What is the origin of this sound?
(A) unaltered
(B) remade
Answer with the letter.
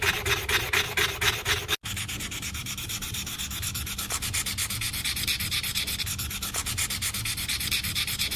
A